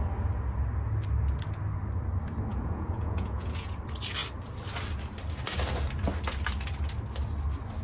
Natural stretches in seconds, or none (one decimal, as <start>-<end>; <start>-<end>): 0.0-2.5; 3.7-7.8